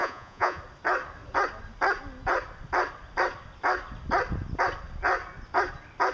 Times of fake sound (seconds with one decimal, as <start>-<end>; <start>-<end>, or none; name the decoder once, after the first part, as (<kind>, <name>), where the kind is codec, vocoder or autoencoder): 0.0-0.6 (vocoder, Vocos)